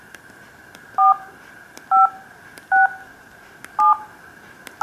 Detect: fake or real real